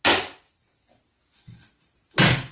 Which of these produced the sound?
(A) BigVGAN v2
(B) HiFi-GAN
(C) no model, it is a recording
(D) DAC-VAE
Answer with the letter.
C